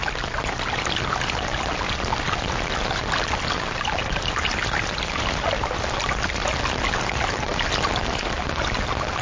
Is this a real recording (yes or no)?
yes